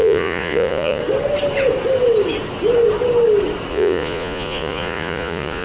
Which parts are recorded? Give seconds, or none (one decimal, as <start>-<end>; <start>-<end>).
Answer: 1.0-3.7